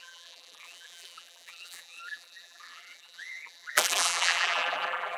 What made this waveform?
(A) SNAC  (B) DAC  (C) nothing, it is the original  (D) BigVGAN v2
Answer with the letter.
D